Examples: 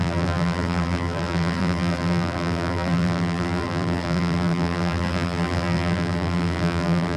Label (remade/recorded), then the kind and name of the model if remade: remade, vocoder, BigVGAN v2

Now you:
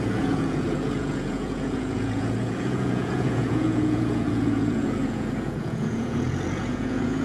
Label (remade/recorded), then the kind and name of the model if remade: remade, vocoder, Vocos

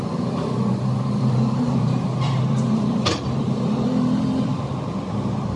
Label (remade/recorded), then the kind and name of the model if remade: remade, vocoder, BigVGAN v2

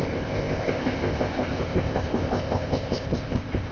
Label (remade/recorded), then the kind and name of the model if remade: remade, codec, ZipCodec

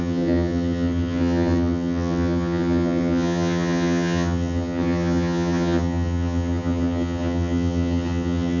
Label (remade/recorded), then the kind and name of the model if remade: remade, vocoder, HiFi-GAN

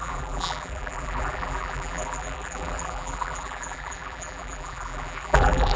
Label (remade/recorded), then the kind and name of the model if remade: remade, vocoder, BigVGAN v2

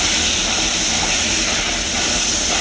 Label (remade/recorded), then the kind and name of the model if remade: recorded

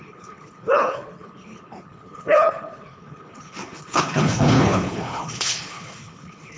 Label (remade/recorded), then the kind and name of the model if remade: remade, codec, HILCodec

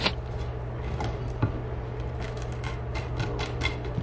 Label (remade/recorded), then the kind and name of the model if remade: recorded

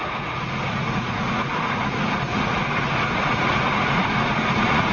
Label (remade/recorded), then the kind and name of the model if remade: remade, vocoder, Vocos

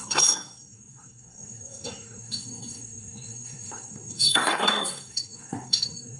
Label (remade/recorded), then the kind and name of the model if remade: remade, codec, SNAC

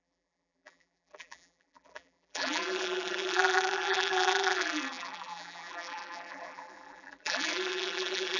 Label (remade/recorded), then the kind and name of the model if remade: remade, vocoder, BigVGAN v2